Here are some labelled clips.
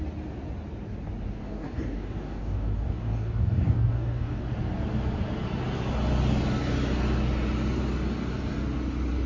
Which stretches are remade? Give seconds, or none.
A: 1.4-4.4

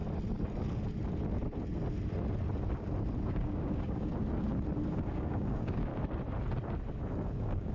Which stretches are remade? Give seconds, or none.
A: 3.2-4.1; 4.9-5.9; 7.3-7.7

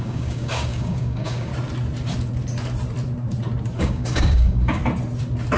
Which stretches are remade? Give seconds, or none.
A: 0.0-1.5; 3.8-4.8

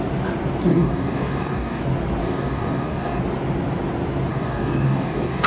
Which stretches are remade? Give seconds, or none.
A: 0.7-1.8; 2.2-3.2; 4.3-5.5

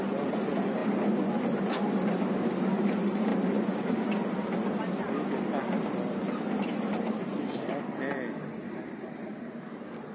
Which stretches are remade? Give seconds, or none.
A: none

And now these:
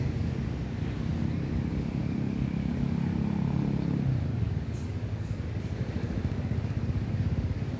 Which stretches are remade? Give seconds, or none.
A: 0.0-3.1; 4.2-7.8

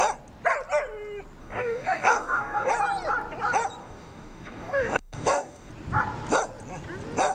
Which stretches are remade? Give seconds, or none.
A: 1.4-2.7; 3.8-5.7